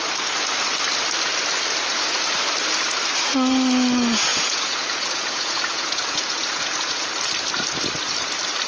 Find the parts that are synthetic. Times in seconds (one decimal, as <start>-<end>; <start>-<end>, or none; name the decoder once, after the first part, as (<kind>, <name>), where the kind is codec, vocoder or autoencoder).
4.3-7.1 (vocoder, Vocos)